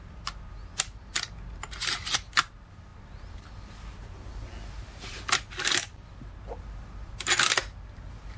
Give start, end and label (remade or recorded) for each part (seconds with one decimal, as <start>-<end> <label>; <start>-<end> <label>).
0.0-8.4 recorded